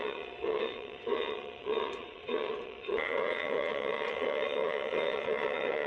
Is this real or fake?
fake